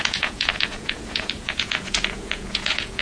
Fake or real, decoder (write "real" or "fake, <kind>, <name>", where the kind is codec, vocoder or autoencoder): fake, vocoder, Vocos